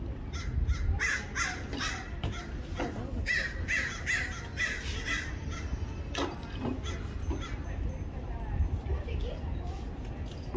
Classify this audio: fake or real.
real